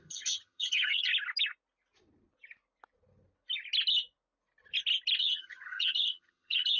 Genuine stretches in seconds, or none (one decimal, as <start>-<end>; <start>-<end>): 1.1-5.2